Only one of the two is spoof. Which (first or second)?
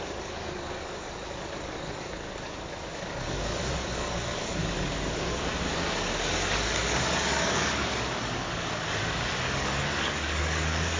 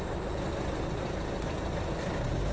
first